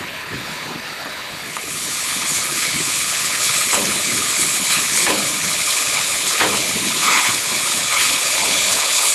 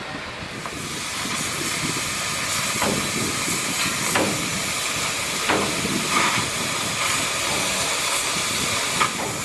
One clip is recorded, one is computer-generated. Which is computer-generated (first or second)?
first